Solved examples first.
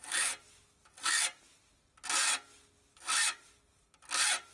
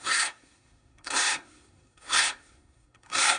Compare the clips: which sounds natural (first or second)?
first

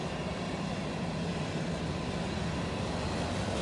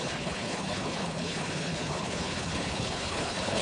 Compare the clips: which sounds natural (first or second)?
first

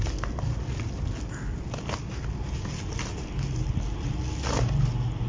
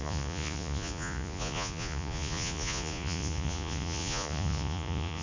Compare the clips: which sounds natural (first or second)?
first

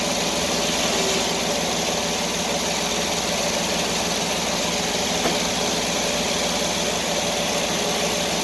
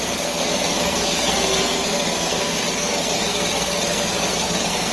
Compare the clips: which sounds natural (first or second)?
first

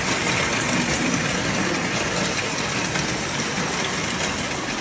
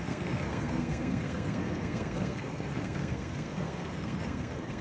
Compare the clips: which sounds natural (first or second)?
first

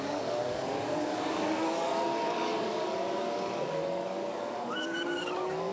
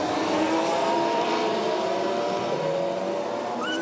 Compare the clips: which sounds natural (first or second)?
second